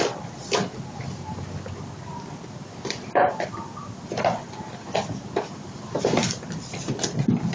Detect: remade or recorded remade